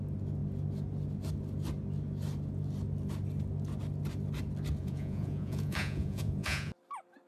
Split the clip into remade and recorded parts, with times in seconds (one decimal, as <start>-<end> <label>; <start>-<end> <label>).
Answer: 0.0-4.8 recorded; 4.8-6.7 remade; 6.7-7.3 recorded